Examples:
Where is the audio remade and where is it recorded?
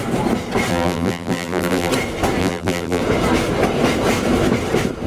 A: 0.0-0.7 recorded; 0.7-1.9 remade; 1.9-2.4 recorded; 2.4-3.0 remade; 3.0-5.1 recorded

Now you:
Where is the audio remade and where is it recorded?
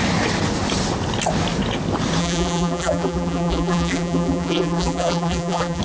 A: 0.0-2.2 recorded; 2.2-5.8 remade